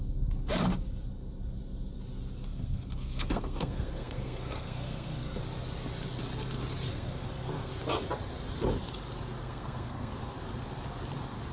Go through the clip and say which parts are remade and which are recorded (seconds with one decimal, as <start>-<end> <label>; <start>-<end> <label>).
0.0-2.5 recorded; 2.5-5.4 remade; 5.4-6.9 recorded; 6.9-7.7 remade; 7.7-9.4 recorded; 9.4-10.1 remade; 10.1-11.5 recorded